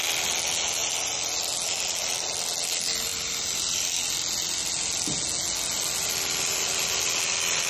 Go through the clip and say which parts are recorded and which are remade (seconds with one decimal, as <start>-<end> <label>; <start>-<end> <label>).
0.0-7.7 recorded